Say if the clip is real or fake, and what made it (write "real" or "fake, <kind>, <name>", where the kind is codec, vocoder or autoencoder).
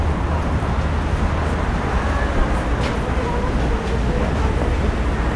real